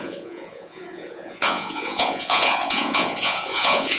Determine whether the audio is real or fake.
fake